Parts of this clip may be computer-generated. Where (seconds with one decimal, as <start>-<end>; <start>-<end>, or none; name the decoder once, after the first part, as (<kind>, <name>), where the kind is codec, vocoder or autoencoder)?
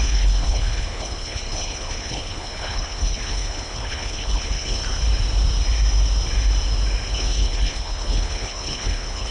0.0-4.8 (codec, HILCodec); 7.1-9.3